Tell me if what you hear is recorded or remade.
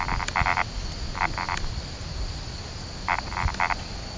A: recorded